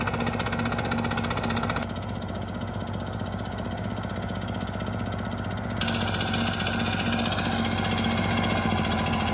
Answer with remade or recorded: recorded